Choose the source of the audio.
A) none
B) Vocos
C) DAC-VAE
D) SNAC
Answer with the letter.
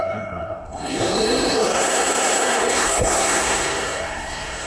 D